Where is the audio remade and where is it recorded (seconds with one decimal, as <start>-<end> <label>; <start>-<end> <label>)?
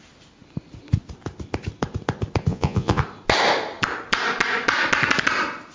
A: 0.0-2.5 recorded; 2.5-3.0 remade; 3.0-5.7 recorded